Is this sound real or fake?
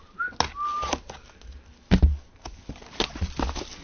real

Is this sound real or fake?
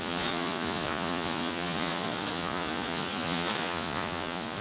fake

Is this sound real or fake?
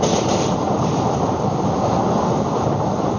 real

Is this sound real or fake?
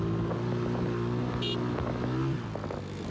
real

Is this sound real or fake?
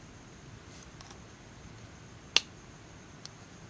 real